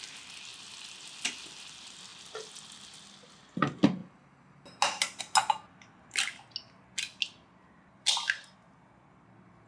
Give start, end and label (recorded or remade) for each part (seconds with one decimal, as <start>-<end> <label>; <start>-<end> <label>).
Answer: 0.0-0.5 recorded; 0.5-1.3 remade; 1.3-2.1 recorded; 2.1-2.8 remade; 2.8-9.7 recorded